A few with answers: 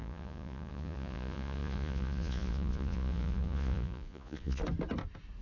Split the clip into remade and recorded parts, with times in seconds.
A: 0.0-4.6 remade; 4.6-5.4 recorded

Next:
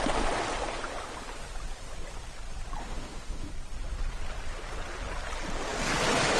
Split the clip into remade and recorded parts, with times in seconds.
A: 0.0-2.8 recorded; 2.8-3.5 remade; 3.5-6.4 recorded